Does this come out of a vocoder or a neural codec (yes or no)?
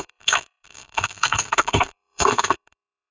yes